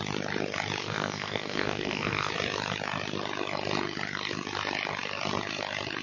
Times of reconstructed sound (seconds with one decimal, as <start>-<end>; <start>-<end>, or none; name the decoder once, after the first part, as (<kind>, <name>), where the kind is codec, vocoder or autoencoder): 0.8-2.3 (codec, SNAC)